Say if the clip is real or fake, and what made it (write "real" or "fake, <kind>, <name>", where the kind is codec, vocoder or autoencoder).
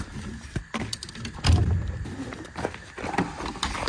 real